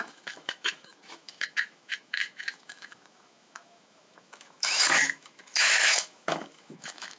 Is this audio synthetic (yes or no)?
yes